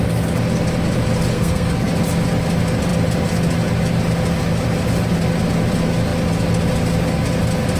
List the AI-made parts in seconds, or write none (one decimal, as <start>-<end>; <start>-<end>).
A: 1.3-1.9